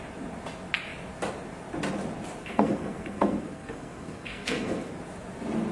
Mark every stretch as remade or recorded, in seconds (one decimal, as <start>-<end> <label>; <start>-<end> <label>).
0.0-2.4 recorded; 2.4-4.9 remade; 4.9-5.7 recorded